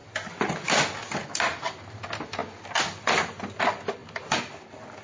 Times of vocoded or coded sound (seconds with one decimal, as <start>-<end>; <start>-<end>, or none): none